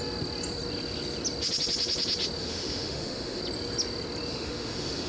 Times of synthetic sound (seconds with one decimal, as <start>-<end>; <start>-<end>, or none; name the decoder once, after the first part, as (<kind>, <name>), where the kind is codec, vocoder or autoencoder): 2.4-3.4 (autoencoder, DAC-VAE); 4.3-5.1